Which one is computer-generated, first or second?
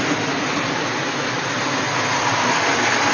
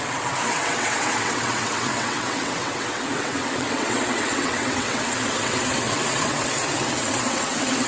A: second